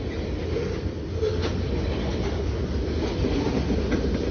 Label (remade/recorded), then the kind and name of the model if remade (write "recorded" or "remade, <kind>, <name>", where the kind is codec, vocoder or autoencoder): recorded